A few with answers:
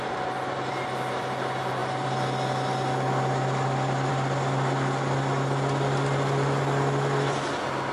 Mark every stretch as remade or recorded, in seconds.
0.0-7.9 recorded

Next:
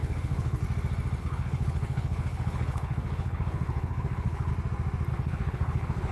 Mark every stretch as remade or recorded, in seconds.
0.0-0.6 remade; 0.6-1.2 recorded; 1.2-4.5 remade; 4.5-5.1 recorded; 5.1-6.1 remade